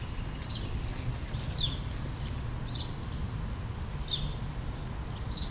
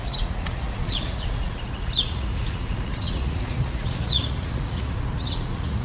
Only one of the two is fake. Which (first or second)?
second